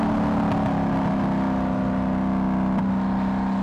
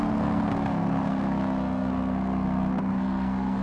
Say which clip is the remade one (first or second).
second